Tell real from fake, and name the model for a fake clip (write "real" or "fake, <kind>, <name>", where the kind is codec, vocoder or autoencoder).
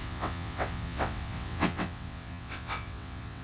fake, vocoder, WaveNeXt